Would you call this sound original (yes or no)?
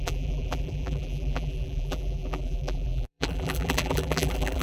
no